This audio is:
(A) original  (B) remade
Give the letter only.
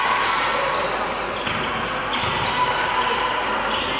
A